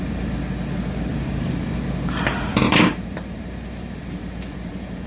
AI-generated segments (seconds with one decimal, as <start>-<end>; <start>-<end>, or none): 1.1-1.8; 2.5-5.1